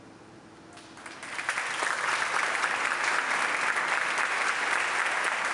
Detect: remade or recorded recorded